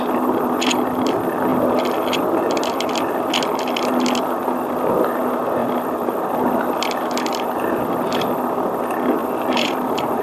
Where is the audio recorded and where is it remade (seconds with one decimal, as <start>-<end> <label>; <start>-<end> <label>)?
0.0-5.6 recorded; 5.6-6.2 remade; 6.2-9.2 recorded; 9.2-10.2 remade